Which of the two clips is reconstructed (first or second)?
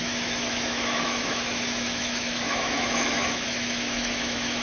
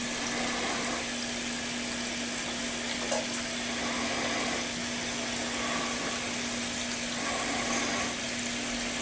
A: first